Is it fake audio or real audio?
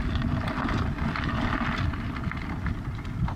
real